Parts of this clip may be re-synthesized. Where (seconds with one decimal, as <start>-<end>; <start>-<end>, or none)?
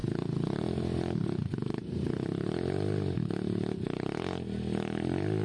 none